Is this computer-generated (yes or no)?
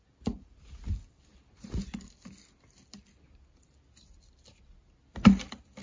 no